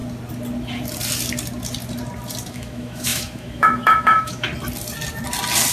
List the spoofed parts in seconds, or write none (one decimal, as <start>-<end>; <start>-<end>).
2.5-4.5